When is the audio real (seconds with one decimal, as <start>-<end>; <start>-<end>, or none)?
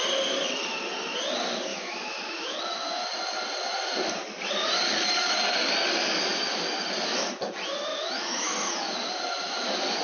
0.0-1.7; 2.6-7.9; 8.7-10.0